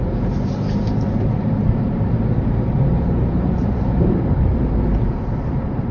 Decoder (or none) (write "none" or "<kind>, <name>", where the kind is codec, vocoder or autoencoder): vocoder, BigVGAN v2